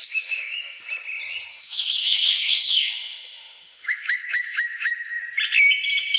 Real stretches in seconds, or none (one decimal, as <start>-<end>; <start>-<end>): 0.8-1.5; 5.2-6.2